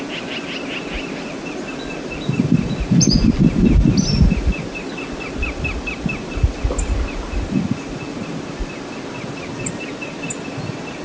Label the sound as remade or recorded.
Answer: recorded